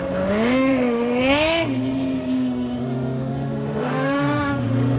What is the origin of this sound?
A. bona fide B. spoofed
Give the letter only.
B